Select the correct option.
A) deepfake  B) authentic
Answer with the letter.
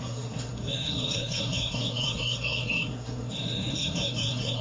A